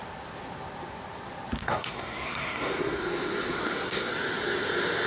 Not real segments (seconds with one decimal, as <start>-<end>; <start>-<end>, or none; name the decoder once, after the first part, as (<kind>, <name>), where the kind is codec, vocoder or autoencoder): 1.6-4.1 (codec, SNAC)